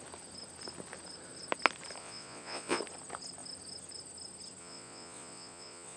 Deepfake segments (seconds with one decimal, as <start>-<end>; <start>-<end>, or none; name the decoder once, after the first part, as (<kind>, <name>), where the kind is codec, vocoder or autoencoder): 2.0-2.8 (vocoder, Vocos); 4.6-6.0